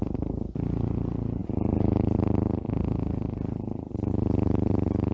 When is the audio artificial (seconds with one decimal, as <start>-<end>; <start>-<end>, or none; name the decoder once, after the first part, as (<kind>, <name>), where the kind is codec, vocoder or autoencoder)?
none